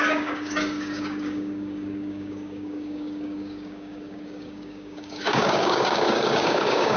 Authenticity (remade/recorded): remade